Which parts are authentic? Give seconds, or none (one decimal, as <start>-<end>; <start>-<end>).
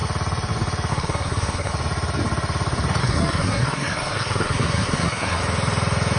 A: 0.0-0.9; 1.7-3.0; 5.4-6.2